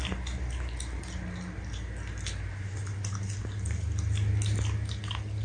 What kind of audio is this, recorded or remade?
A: recorded